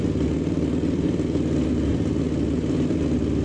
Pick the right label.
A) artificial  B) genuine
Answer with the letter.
A